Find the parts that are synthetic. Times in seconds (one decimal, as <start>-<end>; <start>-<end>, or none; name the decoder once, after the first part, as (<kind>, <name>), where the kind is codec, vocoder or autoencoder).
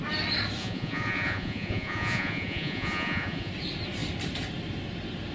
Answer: 0.6-3.5 (vocoder, Vocos)